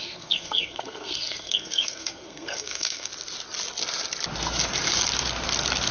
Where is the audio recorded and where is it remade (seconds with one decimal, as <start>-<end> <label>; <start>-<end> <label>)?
0.0-3.1 remade; 3.1-5.9 recorded